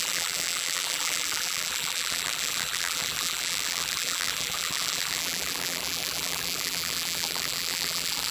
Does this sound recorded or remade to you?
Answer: remade